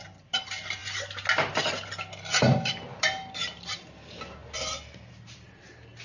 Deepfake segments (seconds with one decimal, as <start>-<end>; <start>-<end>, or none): 0.0-0.8; 1.6-4.4; 5.1-6.0